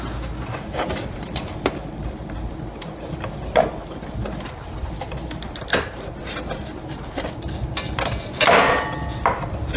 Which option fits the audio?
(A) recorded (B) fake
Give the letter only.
A